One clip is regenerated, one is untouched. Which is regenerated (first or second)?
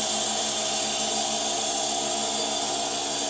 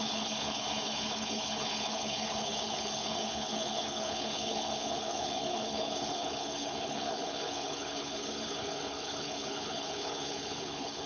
second